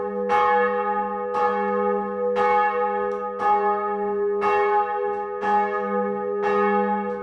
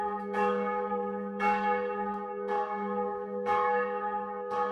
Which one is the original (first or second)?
first